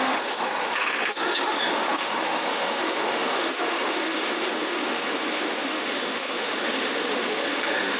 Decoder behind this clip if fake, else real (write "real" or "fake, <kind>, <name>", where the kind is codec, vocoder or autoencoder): fake, autoencoder, DAC-VAE